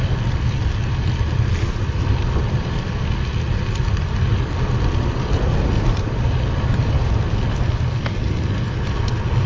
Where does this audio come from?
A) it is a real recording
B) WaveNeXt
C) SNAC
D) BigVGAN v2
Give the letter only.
A